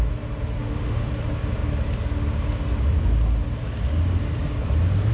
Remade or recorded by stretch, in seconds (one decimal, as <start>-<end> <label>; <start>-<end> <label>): 0.0-0.6 recorded; 0.6-1.1 remade; 1.1-5.1 recorded